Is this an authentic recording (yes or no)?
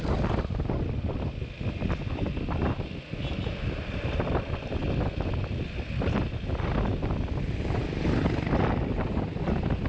yes